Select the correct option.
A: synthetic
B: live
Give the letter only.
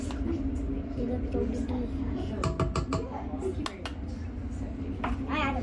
B